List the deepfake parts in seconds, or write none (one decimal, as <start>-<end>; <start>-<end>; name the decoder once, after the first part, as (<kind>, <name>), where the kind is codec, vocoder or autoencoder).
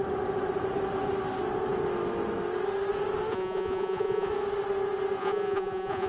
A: 3.3-4.3 (vocoder, Vocos); 5.2-6.1